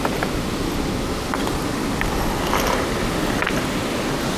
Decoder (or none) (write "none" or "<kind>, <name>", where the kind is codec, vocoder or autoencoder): none